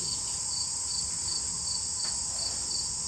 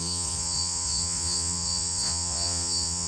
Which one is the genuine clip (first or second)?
first